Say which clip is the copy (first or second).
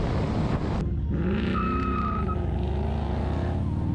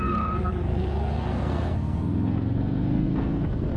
second